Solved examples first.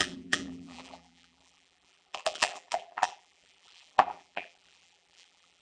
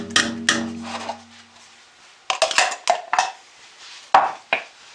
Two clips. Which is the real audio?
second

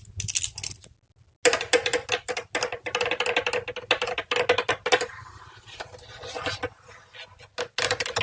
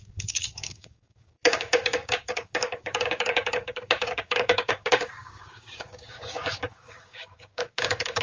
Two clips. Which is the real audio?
first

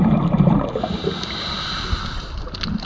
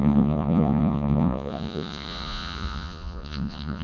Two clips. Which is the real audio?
first